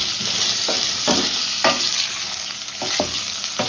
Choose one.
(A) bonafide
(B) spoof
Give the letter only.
A